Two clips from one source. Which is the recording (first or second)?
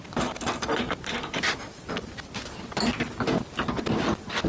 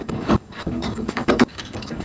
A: first